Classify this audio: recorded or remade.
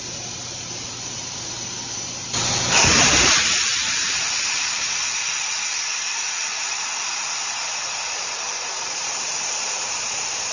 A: remade